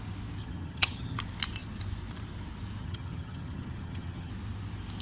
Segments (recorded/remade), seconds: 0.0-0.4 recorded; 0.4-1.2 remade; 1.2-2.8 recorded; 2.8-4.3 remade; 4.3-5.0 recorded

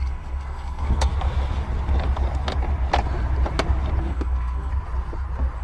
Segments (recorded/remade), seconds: 0.0-1.1 remade; 1.1-4.0 recorded; 4.0-4.7 remade; 4.7-5.6 recorded